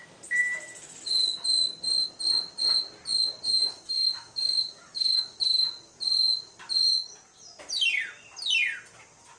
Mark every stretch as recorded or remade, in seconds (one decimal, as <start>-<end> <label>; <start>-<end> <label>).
0.0-3.6 recorded; 3.6-5.4 remade; 5.4-9.4 recorded

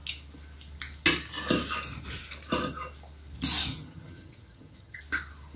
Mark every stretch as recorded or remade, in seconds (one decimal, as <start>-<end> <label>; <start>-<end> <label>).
0.0-3.7 recorded; 3.7-5.0 remade; 5.0-5.6 recorded

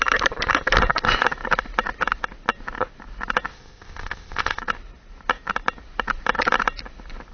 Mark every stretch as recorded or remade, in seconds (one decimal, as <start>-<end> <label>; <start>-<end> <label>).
0.0-3.5 recorded; 3.5-4.6 remade; 4.6-7.3 recorded

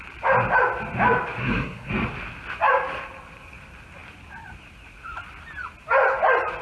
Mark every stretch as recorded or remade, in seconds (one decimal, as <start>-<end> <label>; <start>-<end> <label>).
0.0-1.4 recorded; 1.4-1.9 remade; 1.9-6.6 recorded

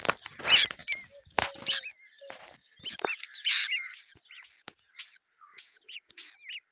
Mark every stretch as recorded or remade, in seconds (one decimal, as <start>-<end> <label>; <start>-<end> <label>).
0.0-5.5 recorded; 5.5-6.1 remade; 6.1-6.7 recorded